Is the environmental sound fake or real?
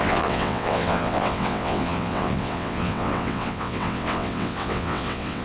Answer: fake